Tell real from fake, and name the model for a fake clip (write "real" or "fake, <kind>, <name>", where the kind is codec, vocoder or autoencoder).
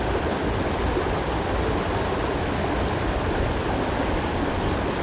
real